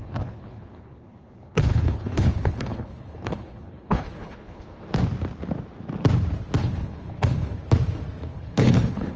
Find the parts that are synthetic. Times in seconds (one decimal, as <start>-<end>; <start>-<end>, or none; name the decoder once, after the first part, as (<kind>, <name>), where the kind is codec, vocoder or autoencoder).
0.0-4.8 (codec, HILCodec); 6.6-7.6; 8.3-9.2